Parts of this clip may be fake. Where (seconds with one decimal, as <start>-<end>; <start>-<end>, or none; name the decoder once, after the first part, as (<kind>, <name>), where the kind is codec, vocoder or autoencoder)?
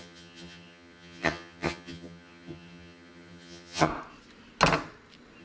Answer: 0.0-3.9 (vocoder, HiFi-GAN)